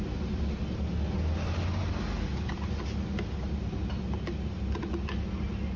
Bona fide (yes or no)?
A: yes